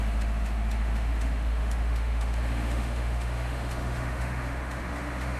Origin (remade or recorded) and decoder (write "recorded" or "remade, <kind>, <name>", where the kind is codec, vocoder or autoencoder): remade, autoencoder, DAC-VAE